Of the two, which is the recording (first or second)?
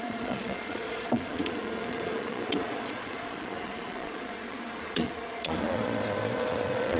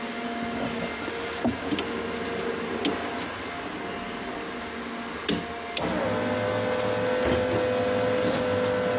second